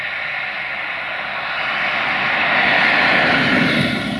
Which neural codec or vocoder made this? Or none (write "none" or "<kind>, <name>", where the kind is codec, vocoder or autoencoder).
none